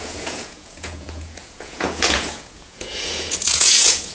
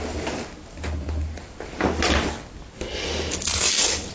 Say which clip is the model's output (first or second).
first